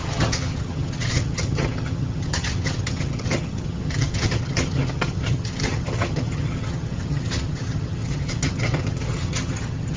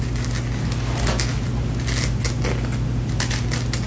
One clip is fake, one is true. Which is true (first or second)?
second